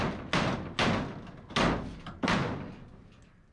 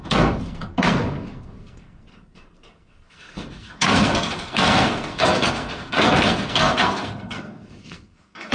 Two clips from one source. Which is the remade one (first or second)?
second